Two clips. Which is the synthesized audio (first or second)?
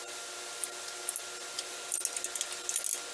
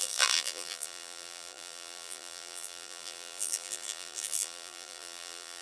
second